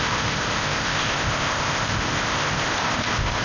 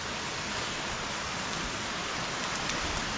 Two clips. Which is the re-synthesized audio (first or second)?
first